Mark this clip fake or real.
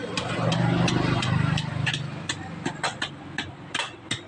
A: real